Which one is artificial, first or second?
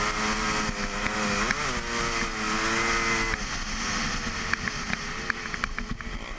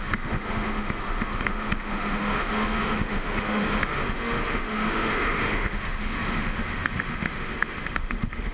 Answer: second